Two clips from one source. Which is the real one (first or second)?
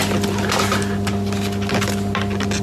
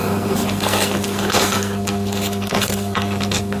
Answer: first